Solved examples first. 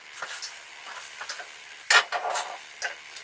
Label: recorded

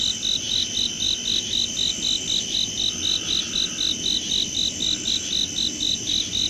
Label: recorded